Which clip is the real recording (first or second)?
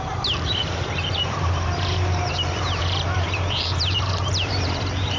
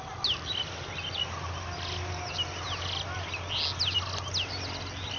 second